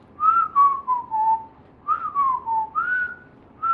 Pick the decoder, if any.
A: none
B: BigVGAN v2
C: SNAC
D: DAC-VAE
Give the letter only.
B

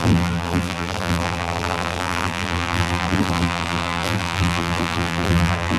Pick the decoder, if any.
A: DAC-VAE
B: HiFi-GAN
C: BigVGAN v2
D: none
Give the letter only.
C